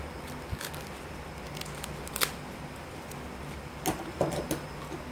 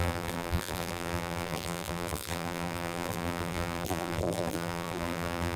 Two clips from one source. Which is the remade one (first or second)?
second